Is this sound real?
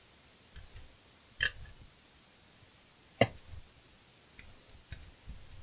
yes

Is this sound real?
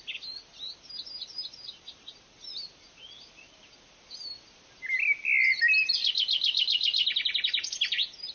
yes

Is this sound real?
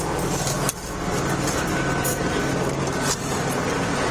yes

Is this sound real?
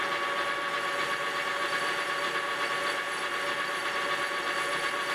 yes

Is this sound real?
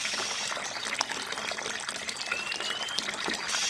yes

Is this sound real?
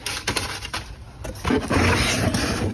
yes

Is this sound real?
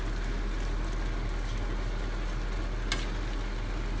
yes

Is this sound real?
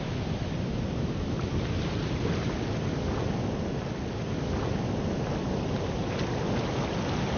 yes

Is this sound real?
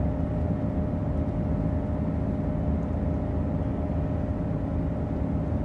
yes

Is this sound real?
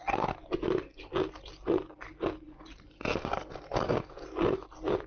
yes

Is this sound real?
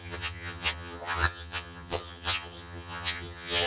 no